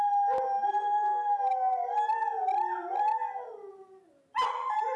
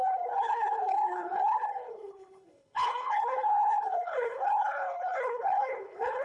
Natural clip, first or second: first